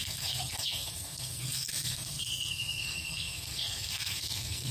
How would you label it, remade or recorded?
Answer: remade